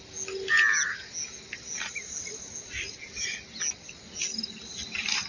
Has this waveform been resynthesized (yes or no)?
no